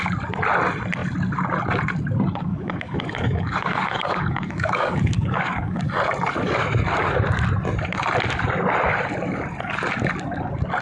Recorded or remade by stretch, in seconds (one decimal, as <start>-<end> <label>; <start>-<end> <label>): 0.0-2.5 recorded; 2.5-5.8 remade; 5.8-10.8 recorded